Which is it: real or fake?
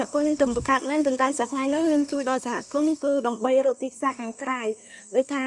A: fake